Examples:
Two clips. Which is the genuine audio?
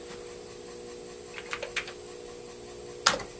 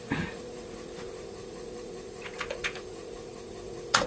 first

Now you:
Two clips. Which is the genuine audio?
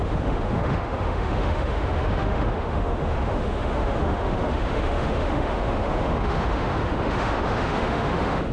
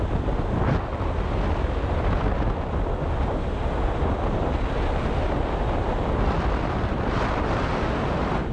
second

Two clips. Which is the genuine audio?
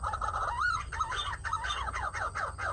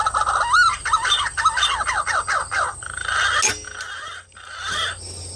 second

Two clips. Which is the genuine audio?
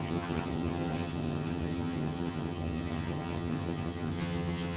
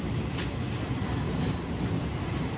second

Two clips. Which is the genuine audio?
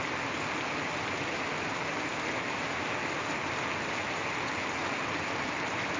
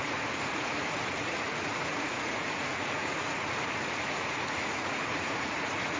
first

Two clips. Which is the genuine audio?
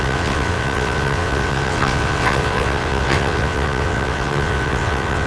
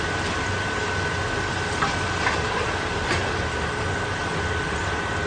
second